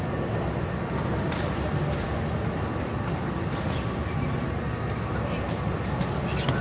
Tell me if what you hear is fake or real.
real